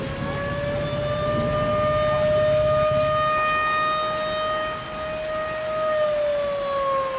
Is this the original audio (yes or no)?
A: yes